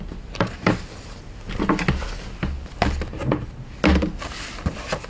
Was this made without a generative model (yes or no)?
yes